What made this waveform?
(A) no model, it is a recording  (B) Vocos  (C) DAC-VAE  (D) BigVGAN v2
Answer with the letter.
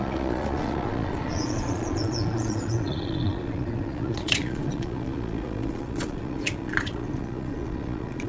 B